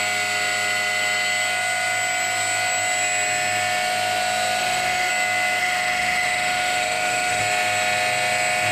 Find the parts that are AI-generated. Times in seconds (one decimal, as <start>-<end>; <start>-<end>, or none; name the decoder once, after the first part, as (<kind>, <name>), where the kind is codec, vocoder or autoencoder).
4.6-5.1 (autoencoder, DAC-VAE); 5.6-7.4